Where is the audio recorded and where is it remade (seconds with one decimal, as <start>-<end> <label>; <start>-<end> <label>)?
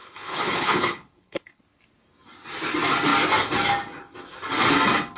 0.0-1.6 remade; 1.6-5.2 recorded